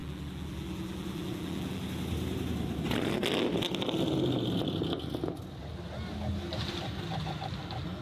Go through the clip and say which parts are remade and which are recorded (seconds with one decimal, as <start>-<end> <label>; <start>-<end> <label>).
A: 0.0-1.8 remade; 1.8-8.0 recorded